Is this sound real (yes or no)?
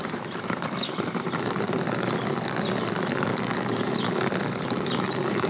yes